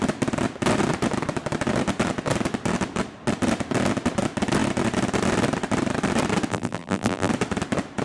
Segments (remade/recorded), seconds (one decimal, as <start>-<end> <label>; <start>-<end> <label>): 0.0-6.5 recorded; 6.5-7.3 remade; 7.3-8.0 recorded